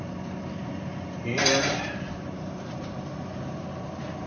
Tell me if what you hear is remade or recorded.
remade